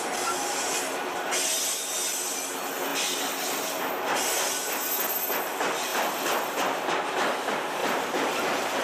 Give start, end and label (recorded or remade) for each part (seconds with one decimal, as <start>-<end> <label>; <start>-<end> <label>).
0.0-5.9 recorded; 5.9-6.9 remade; 6.9-7.8 recorded; 7.8-8.4 remade; 8.4-8.8 recorded